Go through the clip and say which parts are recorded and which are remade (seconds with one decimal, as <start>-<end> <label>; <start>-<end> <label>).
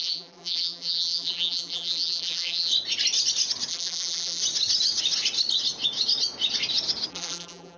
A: 0.0-2.7 remade; 2.7-3.7 recorded; 3.7-4.4 remade; 4.4-7.1 recorded; 7.1-7.8 remade